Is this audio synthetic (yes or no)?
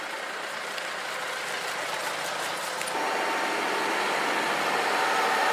no